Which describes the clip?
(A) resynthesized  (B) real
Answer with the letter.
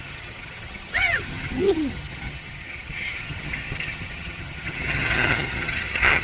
A